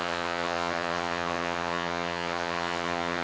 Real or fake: fake